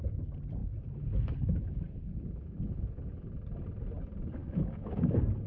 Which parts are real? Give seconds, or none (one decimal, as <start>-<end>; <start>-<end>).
0.0-4.4; 5.1-5.5